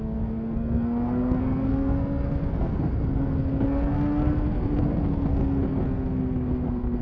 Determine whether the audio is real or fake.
fake